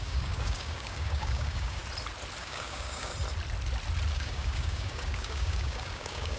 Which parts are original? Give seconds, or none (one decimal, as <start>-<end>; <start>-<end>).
1.8-2.4; 3.1-4.1